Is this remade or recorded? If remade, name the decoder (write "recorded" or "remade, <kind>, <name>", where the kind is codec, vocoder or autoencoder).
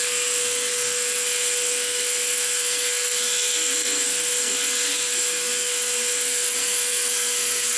remade, codec, SNAC